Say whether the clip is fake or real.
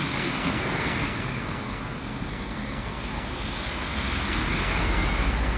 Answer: fake